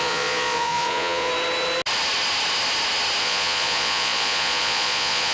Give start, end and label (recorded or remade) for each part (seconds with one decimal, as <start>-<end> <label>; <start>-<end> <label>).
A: 0.0-1.3 remade; 1.3-3.2 recorded; 3.2-5.3 remade